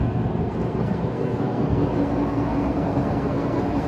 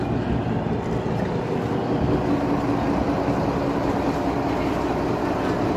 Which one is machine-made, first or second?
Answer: first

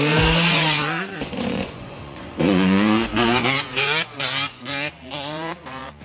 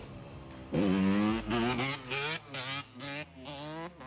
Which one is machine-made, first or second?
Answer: first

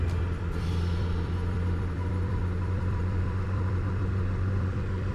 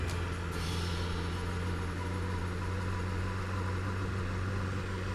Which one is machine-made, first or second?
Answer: first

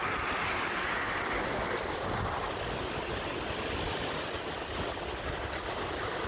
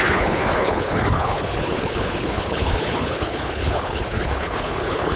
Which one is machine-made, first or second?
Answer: second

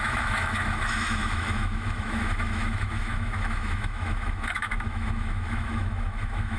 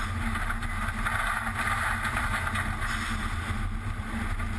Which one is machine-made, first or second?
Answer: first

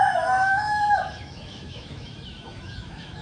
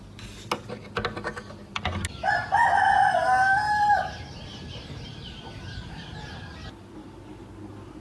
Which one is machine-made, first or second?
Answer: first